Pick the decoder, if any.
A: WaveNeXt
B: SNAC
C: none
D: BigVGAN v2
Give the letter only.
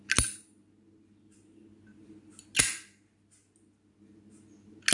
C